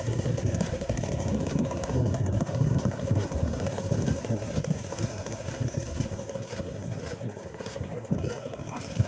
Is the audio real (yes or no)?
no